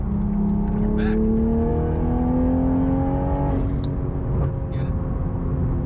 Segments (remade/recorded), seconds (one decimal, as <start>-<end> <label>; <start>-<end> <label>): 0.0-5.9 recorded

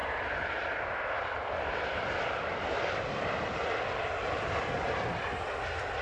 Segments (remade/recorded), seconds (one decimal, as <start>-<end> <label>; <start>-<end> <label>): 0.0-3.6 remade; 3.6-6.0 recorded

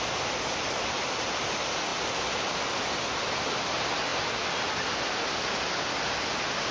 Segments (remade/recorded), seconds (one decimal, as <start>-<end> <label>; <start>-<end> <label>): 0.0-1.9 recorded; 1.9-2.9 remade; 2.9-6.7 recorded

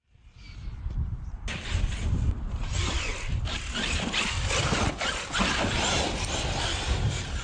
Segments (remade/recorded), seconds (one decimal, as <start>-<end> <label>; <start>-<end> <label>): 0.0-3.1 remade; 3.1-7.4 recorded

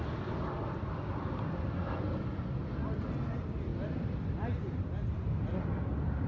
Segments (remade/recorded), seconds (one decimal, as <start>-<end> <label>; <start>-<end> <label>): 0.0-3.7 recorded; 3.7-5.4 remade; 5.4-6.3 recorded

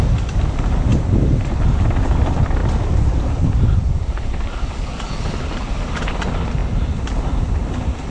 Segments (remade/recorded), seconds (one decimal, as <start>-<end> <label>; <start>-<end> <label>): 0.0-0.9 recorded; 0.9-1.4 remade; 1.4-2.6 recorded; 2.6-5.4 remade; 5.4-8.1 recorded

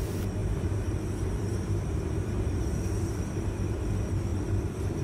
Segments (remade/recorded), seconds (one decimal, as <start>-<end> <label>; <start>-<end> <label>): 0.0-0.4 recorded; 0.4-3.4 remade; 3.4-5.0 recorded